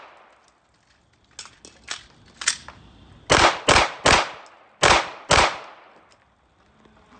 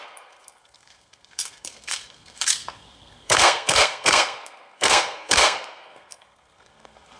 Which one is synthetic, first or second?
second